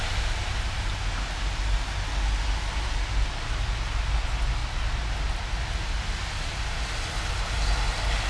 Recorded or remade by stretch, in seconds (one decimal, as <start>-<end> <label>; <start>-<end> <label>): 0.0-8.3 recorded